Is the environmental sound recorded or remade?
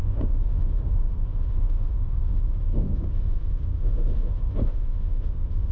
remade